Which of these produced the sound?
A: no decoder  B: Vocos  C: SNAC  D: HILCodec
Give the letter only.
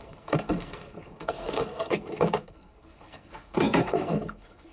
C